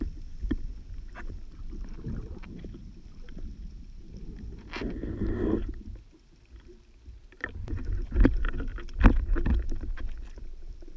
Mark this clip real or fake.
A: fake